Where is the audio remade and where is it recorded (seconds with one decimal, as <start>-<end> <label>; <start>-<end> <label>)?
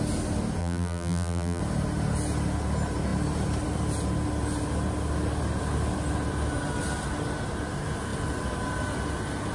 0.0-0.6 recorded; 0.6-1.6 remade; 1.6-9.5 recorded